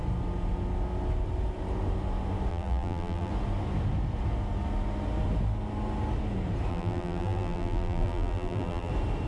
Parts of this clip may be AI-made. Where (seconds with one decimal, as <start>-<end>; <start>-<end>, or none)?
2.5-3.3; 6.7-8.9